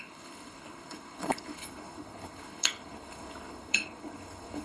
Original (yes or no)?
no